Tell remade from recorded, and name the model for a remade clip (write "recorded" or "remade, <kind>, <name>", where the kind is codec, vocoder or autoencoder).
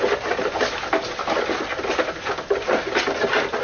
recorded